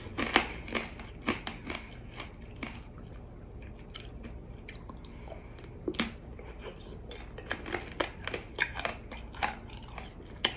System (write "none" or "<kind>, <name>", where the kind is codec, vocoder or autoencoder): none